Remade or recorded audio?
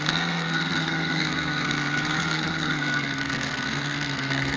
remade